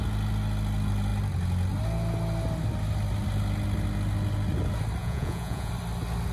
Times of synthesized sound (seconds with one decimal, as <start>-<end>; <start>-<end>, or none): 5.0-5.7